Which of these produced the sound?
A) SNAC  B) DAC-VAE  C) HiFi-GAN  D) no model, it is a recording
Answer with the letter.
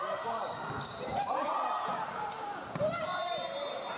D